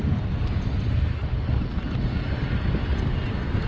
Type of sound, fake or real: real